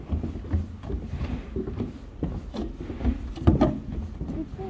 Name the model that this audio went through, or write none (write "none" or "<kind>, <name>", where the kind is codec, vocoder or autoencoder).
none